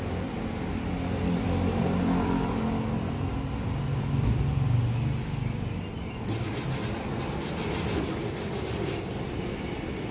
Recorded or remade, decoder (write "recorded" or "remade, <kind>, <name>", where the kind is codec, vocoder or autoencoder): recorded